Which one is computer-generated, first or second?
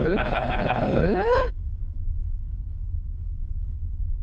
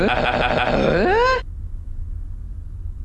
first